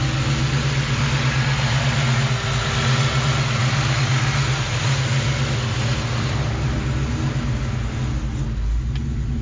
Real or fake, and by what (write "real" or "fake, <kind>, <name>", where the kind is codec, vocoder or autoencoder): real